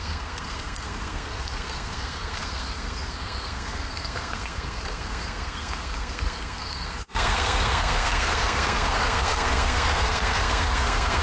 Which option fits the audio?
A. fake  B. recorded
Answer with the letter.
A